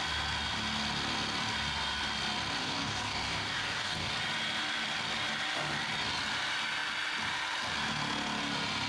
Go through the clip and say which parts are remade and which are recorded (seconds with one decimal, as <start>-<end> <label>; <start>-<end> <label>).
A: 0.0-2.6 recorded; 2.6-4.1 remade; 4.1-8.9 recorded